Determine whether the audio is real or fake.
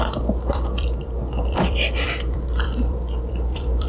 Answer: fake